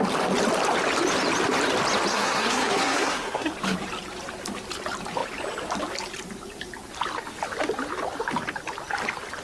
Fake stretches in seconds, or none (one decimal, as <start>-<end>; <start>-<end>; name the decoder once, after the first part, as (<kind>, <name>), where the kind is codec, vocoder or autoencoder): 2.1-3.5 (codec, SNAC)